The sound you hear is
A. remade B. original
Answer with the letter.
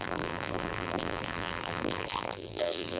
A